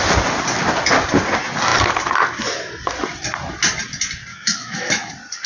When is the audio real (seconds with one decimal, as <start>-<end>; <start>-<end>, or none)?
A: 0.0-4.3; 5.1-5.5

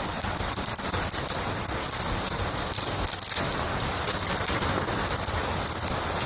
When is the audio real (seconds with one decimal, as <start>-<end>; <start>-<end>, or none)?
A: 0.0-6.3

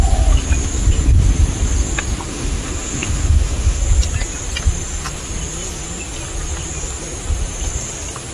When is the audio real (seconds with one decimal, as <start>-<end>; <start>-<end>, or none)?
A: 0.0-2.3; 3.8-8.3

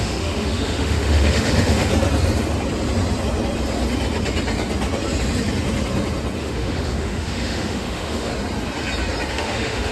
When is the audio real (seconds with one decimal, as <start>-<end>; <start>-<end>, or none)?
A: 1.9-6.4; 8.3-9.3

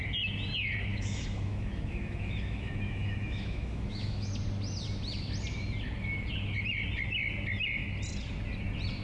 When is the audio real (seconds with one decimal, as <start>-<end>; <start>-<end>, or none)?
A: 0.0-0.9; 4.3-9.0

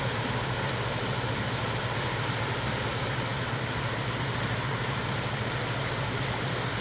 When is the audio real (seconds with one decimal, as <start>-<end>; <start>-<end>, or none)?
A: 0.0-6.8